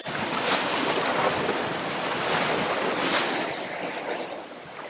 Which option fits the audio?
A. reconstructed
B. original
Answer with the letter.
B